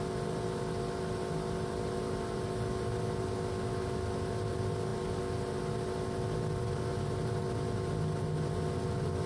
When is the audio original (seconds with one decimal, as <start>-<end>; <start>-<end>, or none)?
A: 0.0-9.3